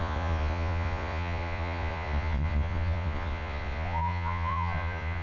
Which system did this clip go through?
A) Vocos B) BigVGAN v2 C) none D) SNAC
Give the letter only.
A